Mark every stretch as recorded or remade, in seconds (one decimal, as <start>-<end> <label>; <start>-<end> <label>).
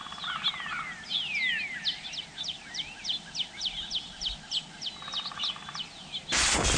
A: 0.0-6.8 recorded